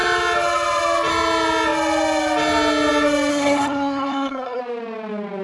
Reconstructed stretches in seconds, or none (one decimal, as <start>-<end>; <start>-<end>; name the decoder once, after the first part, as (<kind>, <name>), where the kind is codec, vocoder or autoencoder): 3.3-4.6 (codec, SNAC)